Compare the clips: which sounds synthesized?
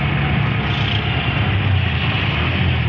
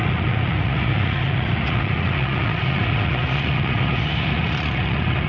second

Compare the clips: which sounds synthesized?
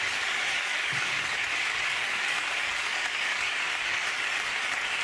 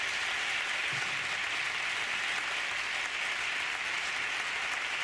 first